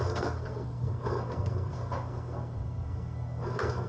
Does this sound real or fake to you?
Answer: fake